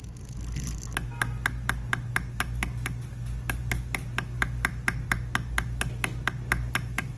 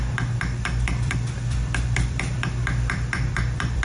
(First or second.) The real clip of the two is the first